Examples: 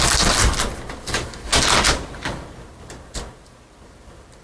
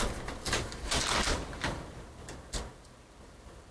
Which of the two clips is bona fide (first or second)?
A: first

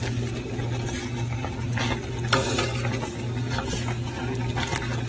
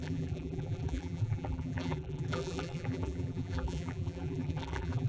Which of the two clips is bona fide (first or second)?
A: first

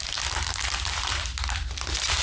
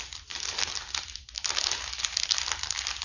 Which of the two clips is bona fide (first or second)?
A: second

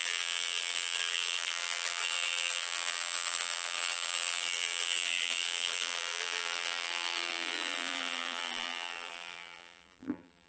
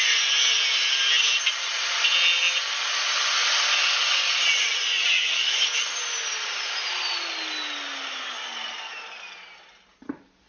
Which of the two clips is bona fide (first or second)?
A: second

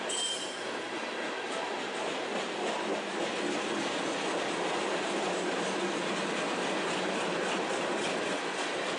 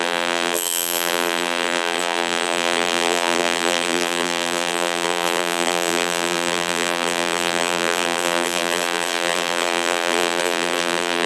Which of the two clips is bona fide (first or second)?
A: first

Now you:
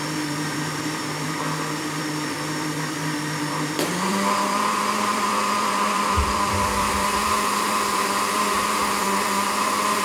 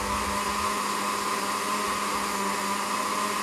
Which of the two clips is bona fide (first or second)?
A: second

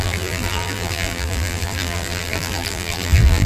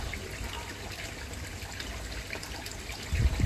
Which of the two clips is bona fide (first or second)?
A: second